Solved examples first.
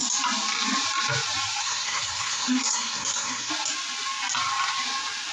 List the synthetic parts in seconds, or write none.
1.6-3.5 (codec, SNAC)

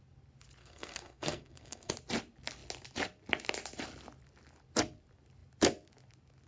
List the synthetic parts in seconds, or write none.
0.6-1.9 (codec, SNAC)